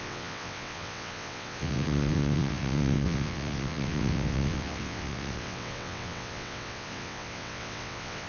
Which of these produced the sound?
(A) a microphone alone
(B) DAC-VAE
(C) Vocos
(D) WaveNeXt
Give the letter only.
D